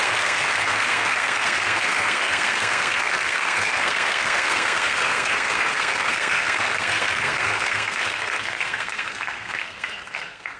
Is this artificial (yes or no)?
yes